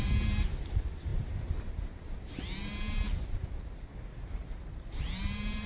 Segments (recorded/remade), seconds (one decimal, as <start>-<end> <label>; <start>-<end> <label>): 0.0-3.9 remade; 3.9-4.7 recorded; 4.7-5.7 remade